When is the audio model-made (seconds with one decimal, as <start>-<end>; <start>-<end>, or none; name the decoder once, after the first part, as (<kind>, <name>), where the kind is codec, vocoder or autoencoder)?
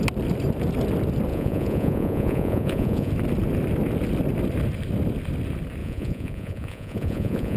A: 1.3-3.1 (vocoder, Vocos); 5.8-7.6